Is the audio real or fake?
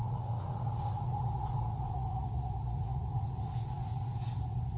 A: fake